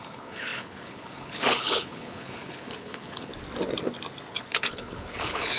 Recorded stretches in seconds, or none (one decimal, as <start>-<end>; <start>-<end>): 3.3-4.3